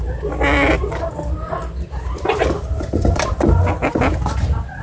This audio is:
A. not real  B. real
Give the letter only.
B